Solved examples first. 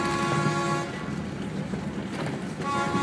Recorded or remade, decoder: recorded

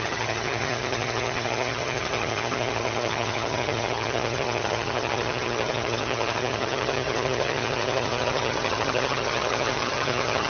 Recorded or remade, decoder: remade, vocoder, HiFi-GAN